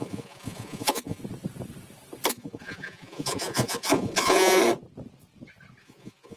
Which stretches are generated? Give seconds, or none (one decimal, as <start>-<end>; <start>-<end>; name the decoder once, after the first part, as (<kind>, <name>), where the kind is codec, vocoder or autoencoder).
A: 0.0-1.2 (vocoder, Vocos); 2.3-4.6; 5.8-6.4